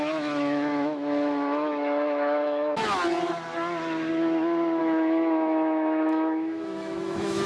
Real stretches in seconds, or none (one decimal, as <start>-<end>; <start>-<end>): 2.8-4.8